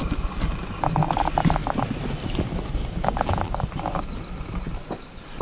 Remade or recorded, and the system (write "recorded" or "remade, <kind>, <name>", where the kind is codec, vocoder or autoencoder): recorded